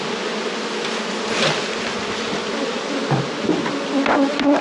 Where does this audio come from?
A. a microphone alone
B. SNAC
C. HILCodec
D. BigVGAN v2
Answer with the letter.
A